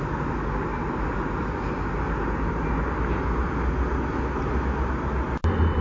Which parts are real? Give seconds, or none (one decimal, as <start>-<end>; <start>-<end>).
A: 0.0-5.8